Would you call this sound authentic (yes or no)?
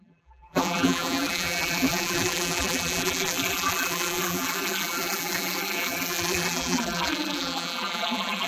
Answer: no